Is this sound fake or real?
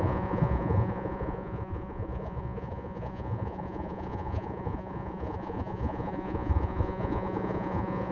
fake